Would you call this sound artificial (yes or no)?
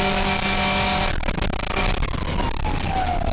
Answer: no